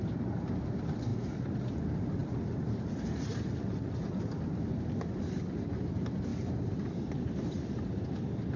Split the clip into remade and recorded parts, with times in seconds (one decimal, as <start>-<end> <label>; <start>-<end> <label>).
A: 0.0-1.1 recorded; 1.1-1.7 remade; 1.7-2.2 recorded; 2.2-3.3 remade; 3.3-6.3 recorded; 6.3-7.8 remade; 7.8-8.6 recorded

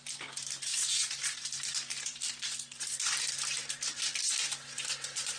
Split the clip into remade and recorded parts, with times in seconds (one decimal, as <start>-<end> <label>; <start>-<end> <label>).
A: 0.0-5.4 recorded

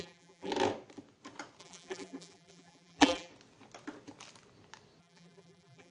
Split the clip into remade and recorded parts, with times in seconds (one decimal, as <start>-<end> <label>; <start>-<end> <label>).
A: 0.0-0.5 remade; 0.5-1.6 recorded; 1.6-3.3 remade; 3.3-5.0 recorded; 5.0-5.9 remade

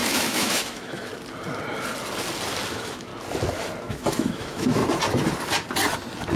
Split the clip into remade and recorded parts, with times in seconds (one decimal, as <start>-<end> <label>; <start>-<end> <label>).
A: 0.0-1.1 remade; 1.1-2.7 recorded; 2.7-3.1 remade; 3.1-3.8 recorded; 3.8-4.8 remade; 4.8-6.4 recorded

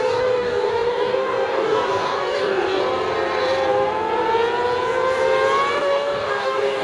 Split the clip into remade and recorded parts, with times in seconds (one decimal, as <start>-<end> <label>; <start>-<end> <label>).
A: 0.0-2.8 remade; 2.8-5.7 recorded; 5.7-6.8 remade

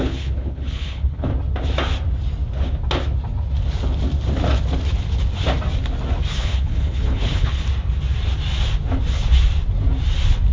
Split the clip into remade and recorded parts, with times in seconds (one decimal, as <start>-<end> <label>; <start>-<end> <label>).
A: 0.0-1.3 remade; 1.3-6.3 recorded; 6.3-7.6 remade; 7.6-10.5 recorded

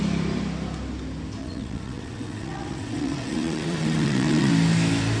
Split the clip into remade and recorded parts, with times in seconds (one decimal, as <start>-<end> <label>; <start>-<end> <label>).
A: 0.0-1.4 recorded; 1.4-4.5 remade; 4.5-5.2 recorded

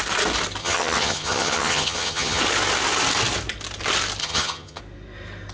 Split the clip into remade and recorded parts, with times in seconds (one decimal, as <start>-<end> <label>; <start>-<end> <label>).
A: 0.0-0.6 recorded; 0.6-2.4 remade; 2.4-4.2 recorded; 4.2-4.8 remade; 4.8-5.5 recorded